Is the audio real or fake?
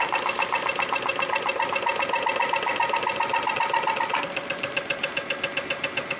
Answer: real